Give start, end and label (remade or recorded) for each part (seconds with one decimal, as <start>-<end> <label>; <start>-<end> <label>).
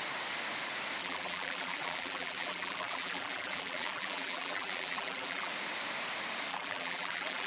0.0-1.0 recorded; 1.0-5.5 remade; 5.5-6.5 recorded; 6.5-7.5 remade